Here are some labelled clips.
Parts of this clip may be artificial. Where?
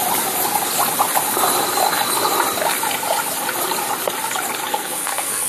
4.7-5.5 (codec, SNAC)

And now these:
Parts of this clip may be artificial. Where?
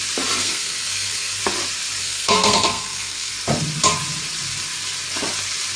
0.4-1.4 (codec, SNAC); 2.0-3.3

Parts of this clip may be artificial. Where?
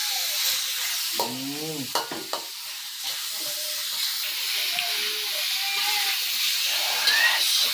none